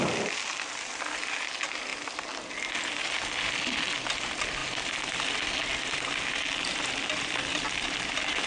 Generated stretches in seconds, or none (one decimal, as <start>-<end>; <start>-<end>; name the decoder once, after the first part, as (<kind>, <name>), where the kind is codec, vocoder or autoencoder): none